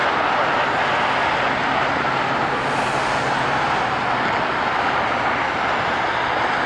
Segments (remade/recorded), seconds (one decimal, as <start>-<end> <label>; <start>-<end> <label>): 0.0-6.7 recorded